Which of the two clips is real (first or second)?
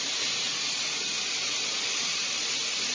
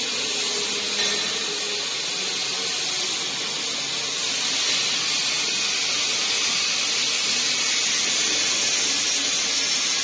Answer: second